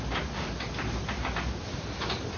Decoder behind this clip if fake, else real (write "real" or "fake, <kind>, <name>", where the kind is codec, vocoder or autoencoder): real